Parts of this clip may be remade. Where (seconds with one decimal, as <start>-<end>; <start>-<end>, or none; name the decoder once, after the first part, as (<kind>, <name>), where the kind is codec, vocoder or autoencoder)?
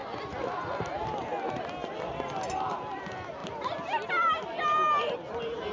none